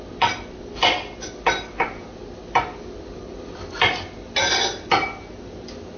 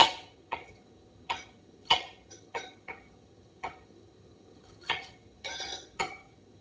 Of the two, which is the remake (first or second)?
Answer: second